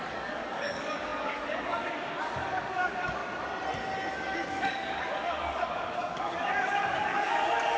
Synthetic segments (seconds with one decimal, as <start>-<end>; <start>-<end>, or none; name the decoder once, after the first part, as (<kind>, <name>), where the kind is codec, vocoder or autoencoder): 0.0-3.2 (codec, DAC); 4.1-7.8